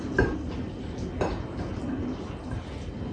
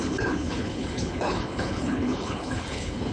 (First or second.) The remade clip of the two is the second